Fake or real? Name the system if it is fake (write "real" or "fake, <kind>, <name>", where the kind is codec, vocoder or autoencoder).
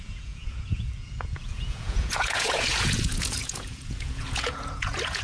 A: fake, vocoder, Vocos